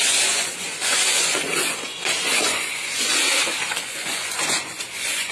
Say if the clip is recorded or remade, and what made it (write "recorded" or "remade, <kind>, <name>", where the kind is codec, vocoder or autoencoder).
remade, vocoder, Vocos